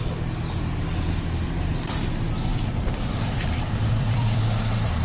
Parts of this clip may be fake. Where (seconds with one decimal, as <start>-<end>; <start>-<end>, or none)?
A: 2.5-4.4